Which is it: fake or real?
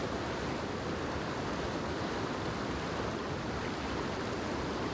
real